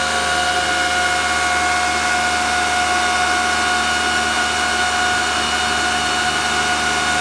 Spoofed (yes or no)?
no